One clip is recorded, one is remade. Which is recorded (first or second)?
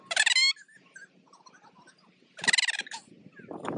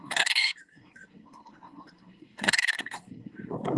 first